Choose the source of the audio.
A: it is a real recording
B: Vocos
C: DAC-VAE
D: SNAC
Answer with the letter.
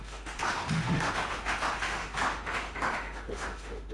C